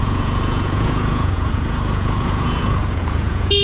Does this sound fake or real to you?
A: fake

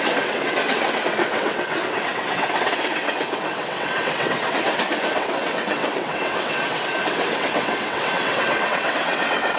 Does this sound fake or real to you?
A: fake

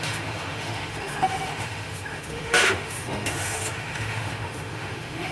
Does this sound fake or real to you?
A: fake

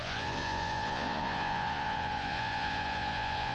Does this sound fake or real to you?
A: fake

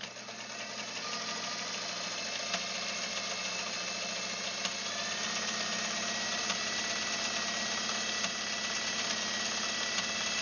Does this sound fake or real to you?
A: real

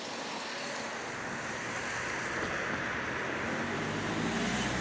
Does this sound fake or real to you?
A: real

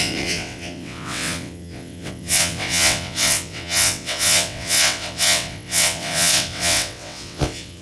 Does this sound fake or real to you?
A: fake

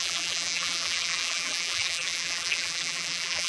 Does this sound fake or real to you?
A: fake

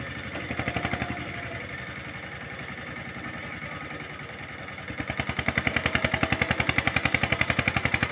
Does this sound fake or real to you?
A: real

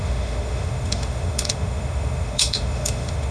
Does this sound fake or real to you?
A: fake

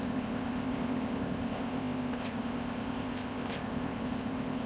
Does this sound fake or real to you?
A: fake